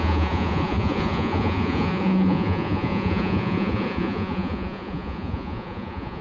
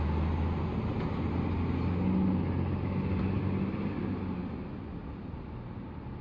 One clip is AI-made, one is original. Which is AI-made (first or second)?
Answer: first